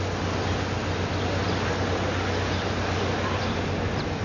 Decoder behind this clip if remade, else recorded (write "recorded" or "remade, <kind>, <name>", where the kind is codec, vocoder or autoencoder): recorded